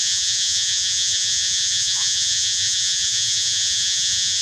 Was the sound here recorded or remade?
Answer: remade